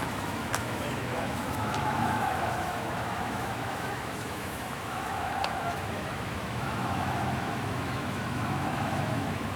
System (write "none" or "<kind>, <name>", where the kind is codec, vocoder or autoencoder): autoencoder, DAC-VAE